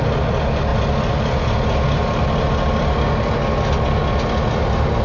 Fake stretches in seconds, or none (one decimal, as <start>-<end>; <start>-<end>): none